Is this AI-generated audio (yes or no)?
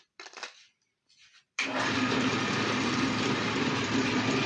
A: yes